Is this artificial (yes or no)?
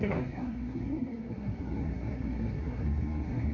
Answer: yes